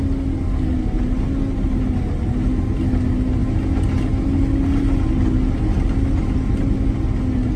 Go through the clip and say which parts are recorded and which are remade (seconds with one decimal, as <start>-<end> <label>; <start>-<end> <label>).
0.0-7.6 recorded